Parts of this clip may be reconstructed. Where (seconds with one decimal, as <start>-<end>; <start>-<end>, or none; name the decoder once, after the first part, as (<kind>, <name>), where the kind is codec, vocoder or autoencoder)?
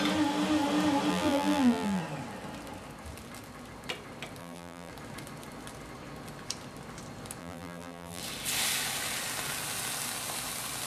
1.1-2.0 (vocoder, BigVGAN v2); 4.4-4.9; 7.4-8.2